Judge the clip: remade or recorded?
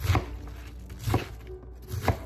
recorded